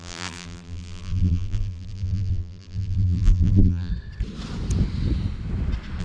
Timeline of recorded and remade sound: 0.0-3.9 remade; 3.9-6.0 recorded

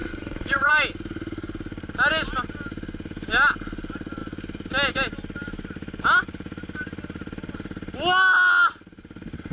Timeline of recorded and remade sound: 0.0-0.7 remade; 0.7-9.5 recorded

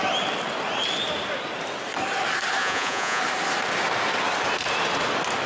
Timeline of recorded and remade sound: 0.0-2.6 recorded; 2.6-3.2 remade; 3.2-5.5 recorded

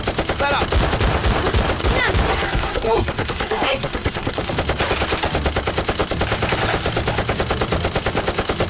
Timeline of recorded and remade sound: 0.0-2.3 recorded; 2.3-4.5 remade; 4.5-8.7 recorded